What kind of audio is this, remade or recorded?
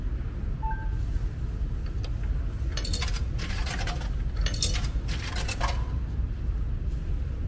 recorded